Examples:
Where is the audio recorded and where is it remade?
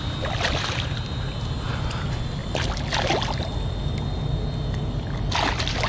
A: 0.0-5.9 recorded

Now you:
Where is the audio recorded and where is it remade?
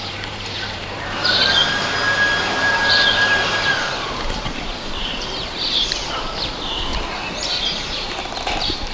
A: 0.0-1.6 remade; 1.6-2.4 recorded; 2.4-6.9 remade; 6.9-7.6 recorded; 7.6-8.9 remade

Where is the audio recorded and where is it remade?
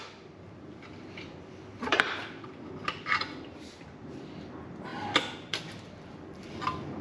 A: 0.0-7.0 remade